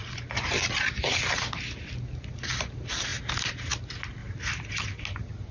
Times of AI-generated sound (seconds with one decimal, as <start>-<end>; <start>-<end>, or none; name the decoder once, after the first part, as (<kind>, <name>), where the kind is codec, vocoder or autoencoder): 4.2-4.8 (vocoder, BigVGAN v2)